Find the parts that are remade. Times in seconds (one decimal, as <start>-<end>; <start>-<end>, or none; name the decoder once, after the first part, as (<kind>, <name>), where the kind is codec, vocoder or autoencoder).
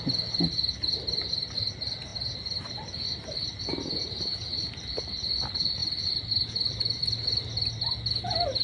none